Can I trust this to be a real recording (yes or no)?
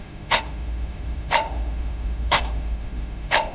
no